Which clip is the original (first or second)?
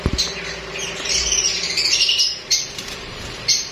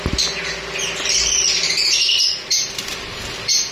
second